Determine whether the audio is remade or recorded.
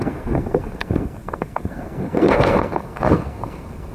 remade